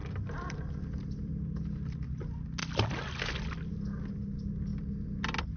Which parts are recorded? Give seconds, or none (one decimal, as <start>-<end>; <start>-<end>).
1.3-5.6